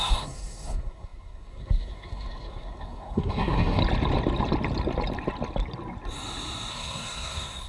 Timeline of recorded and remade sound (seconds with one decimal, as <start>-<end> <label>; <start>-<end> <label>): 0.0-3.8 remade; 3.8-6.7 recorded; 6.7-7.7 remade